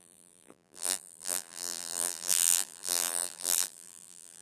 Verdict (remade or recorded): remade